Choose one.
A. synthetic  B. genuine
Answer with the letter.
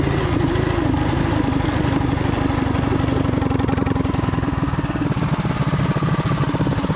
B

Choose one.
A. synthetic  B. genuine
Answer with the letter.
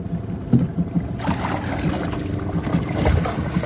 B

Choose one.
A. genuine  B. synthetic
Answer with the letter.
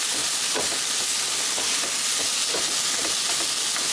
A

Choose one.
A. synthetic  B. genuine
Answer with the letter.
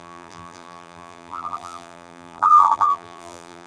A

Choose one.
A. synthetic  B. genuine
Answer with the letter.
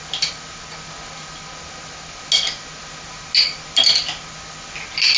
B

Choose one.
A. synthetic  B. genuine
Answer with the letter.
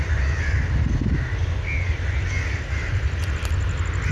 B